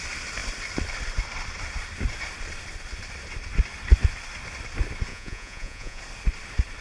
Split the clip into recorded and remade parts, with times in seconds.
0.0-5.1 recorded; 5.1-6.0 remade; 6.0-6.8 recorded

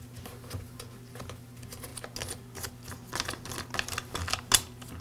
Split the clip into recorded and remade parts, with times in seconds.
0.0-5.0 recorded

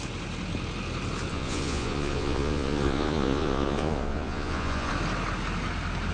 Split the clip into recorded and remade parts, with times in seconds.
0.0-1.3 recorded; 1.3-4.9 remade; 4.9-6.1 recorded

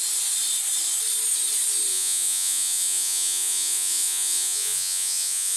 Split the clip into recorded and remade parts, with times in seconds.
0.0-1.9 recorded; 1.9-5.6 remade

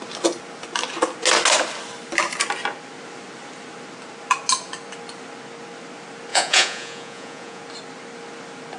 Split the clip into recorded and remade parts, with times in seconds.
0.0-6.3 recorded; 6.3-7.6 remade; 7.6-8.8 recorded